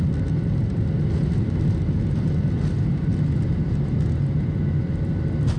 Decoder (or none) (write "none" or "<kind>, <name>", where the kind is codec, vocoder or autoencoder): none